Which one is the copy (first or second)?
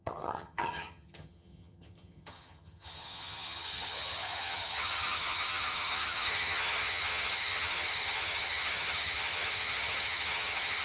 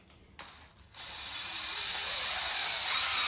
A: first